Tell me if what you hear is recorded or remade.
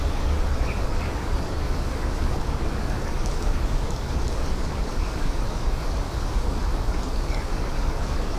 remade